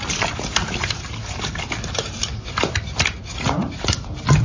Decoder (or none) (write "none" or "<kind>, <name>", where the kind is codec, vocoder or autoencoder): none